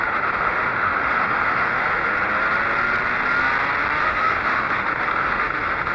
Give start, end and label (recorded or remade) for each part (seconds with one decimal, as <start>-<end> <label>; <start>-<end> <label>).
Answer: 0.0-2.1 remade; 2.1-4.0 recorded; 4.0-5.9 remade